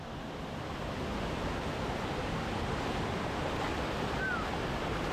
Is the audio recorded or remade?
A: recorded